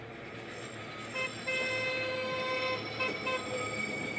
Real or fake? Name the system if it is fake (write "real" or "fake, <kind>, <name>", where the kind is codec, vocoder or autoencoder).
real